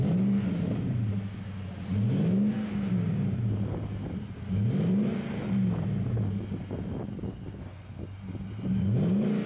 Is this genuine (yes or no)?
yes